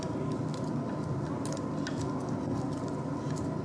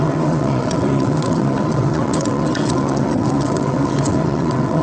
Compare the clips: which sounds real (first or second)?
first